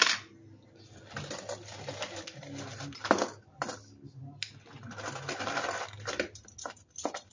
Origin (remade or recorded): recorded